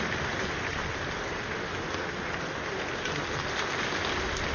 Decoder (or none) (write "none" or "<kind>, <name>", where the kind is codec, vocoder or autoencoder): none